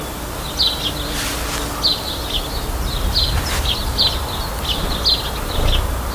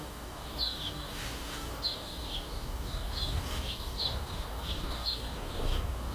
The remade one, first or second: second